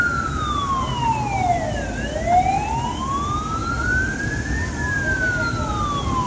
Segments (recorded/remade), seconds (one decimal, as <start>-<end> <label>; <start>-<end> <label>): 0.0-6.3 recorded